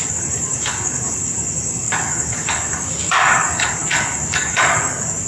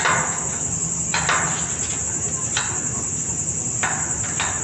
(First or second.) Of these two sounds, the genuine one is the second